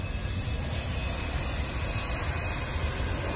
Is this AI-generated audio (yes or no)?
no